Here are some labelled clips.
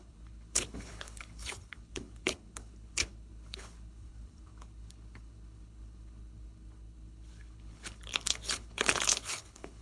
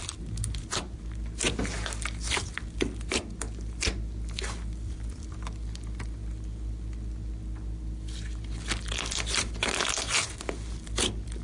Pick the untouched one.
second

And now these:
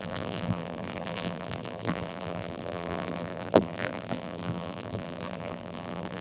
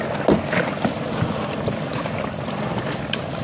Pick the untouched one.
second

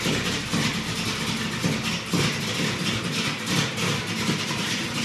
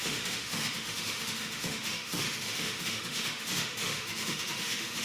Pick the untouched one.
first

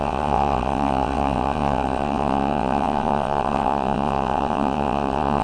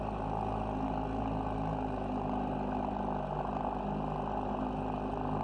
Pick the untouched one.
second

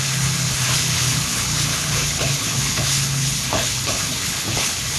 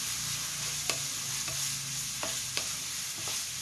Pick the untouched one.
second